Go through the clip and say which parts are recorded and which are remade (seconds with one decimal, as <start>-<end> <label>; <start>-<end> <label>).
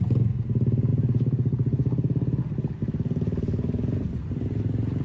0.0-5.0 recorded